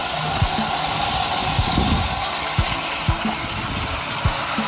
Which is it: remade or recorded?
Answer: recorded